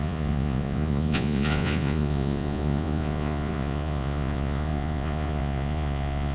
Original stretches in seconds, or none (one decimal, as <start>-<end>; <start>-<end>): none